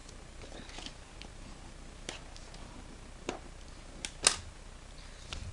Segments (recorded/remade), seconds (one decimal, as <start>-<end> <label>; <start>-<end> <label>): 0.0-5.5 recorded